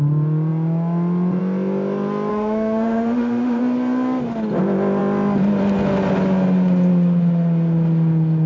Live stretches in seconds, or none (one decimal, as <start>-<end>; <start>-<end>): 0.0-2.3; 3.6-8.5